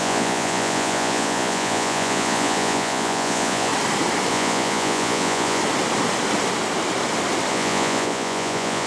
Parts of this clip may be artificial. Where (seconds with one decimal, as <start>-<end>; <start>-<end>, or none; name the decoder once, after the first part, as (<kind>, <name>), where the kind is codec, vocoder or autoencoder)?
0.0-3.7 (vocoder, Vocos); 4.3-5.6; 7.5-8.9